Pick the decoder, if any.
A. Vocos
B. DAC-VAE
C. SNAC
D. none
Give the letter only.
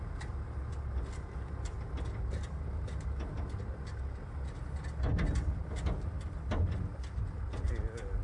D